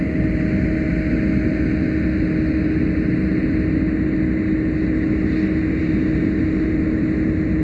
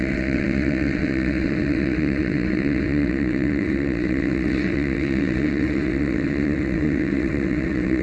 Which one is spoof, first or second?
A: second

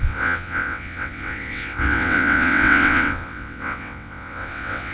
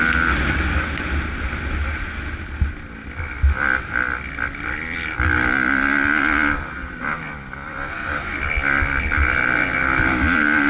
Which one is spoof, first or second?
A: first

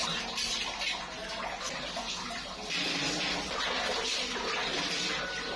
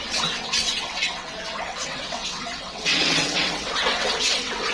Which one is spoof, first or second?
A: second